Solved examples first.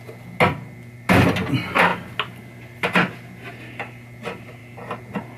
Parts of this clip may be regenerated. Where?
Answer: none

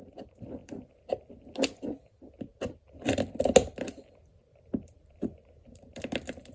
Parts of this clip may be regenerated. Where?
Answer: 0.6-1.3 (vocoder, BigVGAN v2); 2.5-3.0; 4.5-6.0

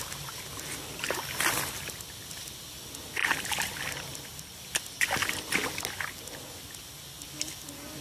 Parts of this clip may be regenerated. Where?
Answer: none

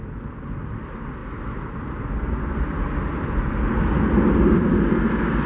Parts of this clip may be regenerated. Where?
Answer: 1.2-3.5 (vocoder, BigVGAN v2)

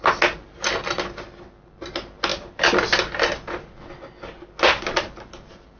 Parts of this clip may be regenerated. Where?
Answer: none

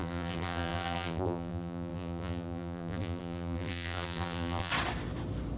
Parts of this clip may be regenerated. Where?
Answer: 0.0-4.7 (vocoder, BigVGAN v2)